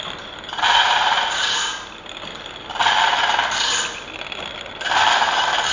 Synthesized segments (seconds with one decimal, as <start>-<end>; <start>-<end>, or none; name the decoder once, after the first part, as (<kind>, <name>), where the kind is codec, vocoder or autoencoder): 0.0-1.7 (vocoder, BigVGAN v2); 5.1-5.7